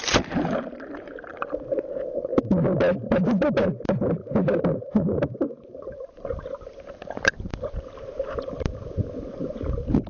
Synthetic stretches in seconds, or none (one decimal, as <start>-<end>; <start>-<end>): 0.0-1.3; 1.8-2.3; 3.1-10.1